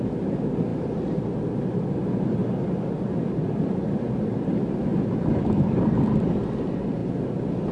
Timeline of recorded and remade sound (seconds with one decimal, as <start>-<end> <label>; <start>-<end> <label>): 0.0-0.7 recorded; 0.7-1.3 remade; 1.3-4.9 recorded; 4.9-6.1 remade; 6.1-7.7 recorded